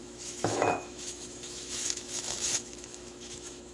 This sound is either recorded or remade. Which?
remade